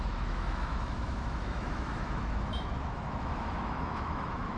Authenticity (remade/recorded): remade